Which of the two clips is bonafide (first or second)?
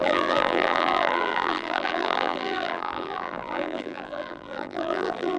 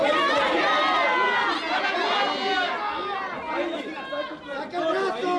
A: second